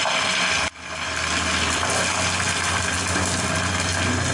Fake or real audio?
real